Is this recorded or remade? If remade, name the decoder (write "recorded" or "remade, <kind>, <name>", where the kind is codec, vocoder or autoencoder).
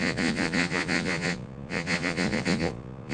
remade, vocoder, Vocos